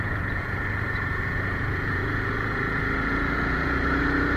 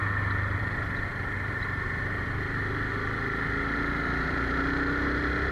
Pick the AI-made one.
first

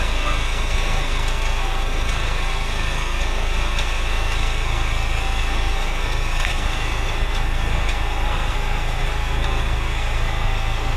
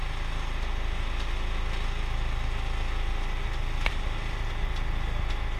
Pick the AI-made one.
first